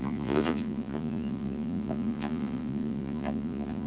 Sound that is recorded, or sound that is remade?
remade